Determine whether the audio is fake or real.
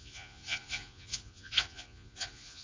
fake